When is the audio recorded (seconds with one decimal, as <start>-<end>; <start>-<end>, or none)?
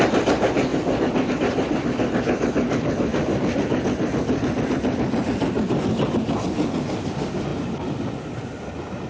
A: 0.0-0.7; 1.3-3.1; 4.7-9.1